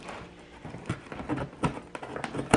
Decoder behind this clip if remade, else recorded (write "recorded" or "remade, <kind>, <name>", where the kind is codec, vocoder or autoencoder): recorded